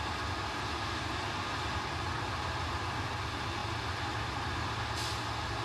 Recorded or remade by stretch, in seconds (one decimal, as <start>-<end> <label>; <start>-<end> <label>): 0.0-5.6 recorded